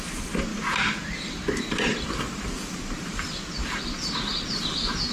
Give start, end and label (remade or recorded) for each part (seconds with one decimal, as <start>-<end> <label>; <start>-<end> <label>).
0.0-0.5 remade; 0.5-1.3 recorded; 1.3-5.1 remade